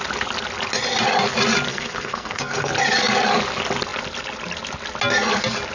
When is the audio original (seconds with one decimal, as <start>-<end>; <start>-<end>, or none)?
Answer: 0.0-1.7; 2.7-5.7